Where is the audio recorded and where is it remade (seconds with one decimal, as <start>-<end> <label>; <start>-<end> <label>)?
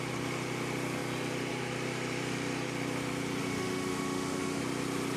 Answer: 0.0-3.4 recorded; 3.4-4.6 remade; 4.6-5.2 recorded